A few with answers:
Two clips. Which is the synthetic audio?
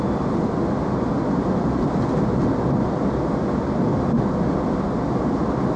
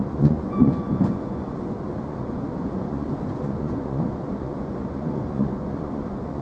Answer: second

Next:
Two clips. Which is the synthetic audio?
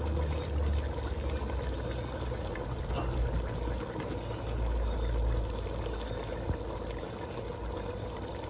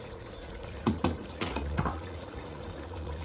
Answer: second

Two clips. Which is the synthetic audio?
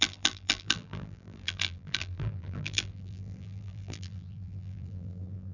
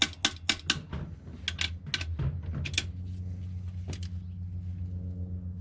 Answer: first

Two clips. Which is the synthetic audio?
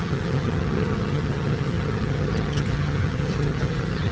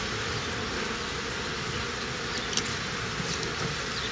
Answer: first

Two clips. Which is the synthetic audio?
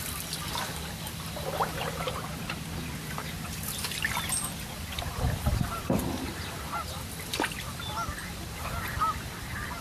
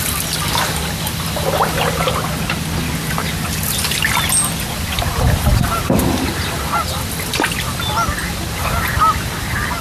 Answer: first